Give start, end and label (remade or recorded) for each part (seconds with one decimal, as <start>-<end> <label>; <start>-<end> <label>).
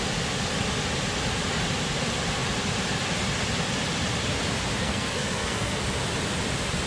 0.0-4.8 recorded; 4.8-5.8 remade; 5.8-6.9 recorded